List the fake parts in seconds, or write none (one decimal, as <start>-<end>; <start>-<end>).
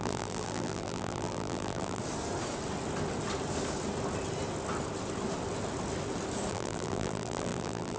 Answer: 0.0-2.0; 6.5-8.0